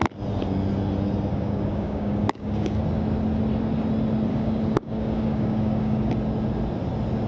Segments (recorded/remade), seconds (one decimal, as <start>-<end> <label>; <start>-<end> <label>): 0.0-1.3 recorded; 1.3-2.8 remade; 2.8-4.3 recorded; 4.3-6.1 remade; 6.1-7.3 recorded